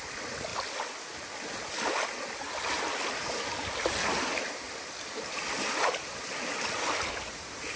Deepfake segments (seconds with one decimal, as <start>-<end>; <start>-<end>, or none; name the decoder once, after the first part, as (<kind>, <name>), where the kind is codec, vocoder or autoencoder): none